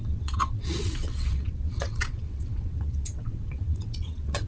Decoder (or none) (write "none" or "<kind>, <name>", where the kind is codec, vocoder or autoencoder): vocoder, WaveNeXt